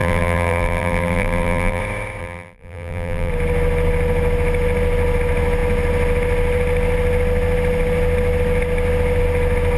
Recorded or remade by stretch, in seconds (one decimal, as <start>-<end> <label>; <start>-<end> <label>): 0.0-1.8 remade; 1.8-2.2 recorded; 2.2-3.3 remade; 3.3-9.8 recorded